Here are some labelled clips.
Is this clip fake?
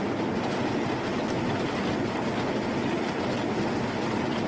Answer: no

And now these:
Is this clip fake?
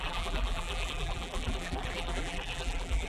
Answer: yes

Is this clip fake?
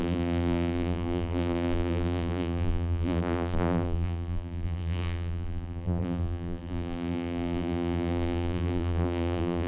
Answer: yes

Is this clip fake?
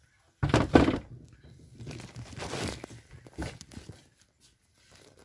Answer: yes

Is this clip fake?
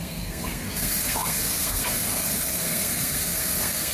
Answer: yes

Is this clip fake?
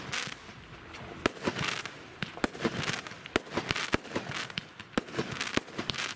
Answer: no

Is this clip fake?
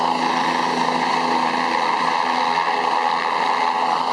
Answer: no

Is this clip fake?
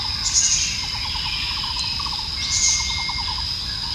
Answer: no